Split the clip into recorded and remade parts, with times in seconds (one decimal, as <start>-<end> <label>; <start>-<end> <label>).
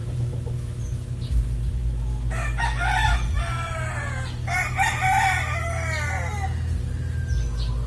0.0-0.8 remade; 0.8-7.9 recorded